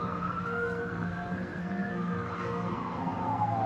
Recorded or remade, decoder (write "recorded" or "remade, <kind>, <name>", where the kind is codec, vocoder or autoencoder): remade, codec, SNAC